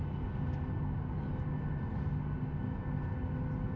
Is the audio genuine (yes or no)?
yes